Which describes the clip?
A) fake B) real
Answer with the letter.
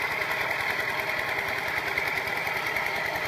B